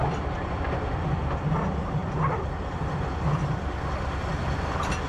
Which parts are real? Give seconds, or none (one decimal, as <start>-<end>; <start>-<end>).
0.0-5.1